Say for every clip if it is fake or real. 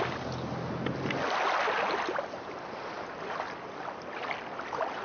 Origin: real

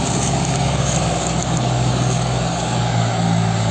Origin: fake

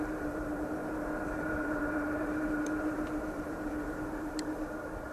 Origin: fake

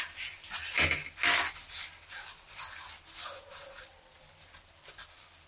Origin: real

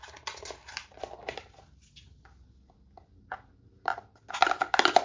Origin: real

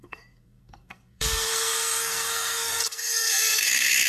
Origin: fake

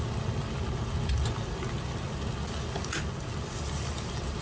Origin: real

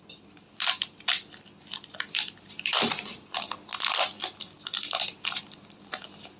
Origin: real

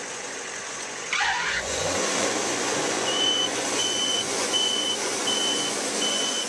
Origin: fake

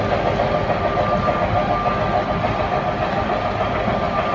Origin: real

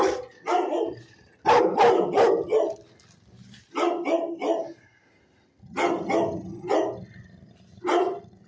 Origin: real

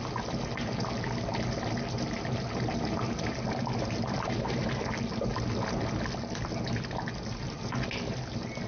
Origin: real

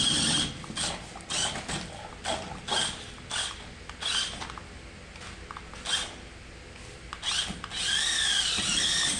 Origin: real